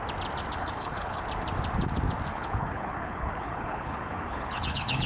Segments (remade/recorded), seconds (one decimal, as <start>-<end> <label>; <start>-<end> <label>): 0.0-0.6 recorded; 0.6-1.2 remade; 1.2-2.3 recorded; 2.3-5.1 remade